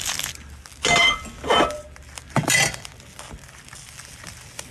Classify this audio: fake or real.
real